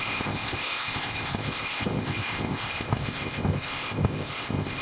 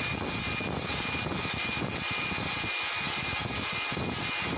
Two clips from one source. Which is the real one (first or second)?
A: second